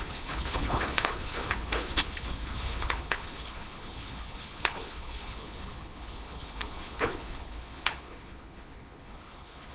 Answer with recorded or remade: remade